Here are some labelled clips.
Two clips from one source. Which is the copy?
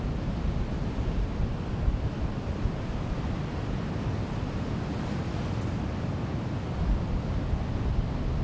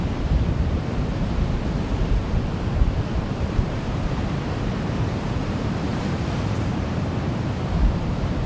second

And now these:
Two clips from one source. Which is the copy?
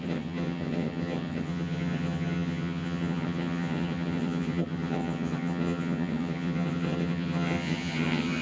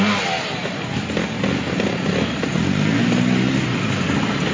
first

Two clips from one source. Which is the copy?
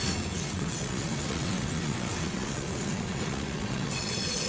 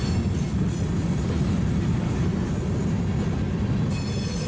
first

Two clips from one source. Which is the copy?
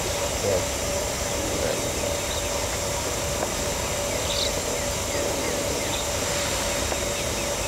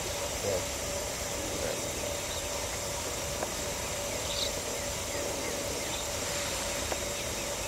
second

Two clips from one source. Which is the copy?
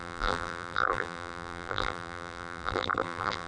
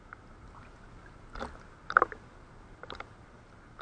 first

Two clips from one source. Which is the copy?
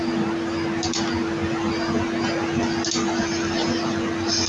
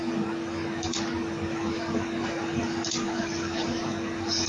second